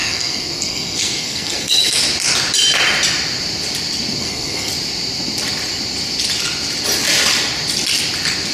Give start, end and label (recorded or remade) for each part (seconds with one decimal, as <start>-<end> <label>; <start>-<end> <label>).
0.0-2.0 remade; 2.0-4.2 recorded; 4.2-4.7 remade; 4.7-8.5 recorded

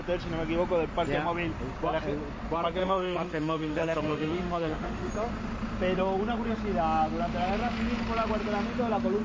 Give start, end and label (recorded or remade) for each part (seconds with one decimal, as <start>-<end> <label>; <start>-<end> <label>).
0.0-2.8 recorded; 2.8-5.1 remade; 5.1-9.2 recorded

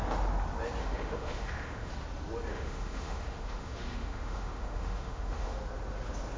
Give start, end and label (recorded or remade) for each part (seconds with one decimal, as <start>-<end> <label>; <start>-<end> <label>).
0.0-0.8 recorded; 0.8-1.9 remade; 1.9-2.5 recorded; 2.5-5.6 remade; 5.6-6.4 recorded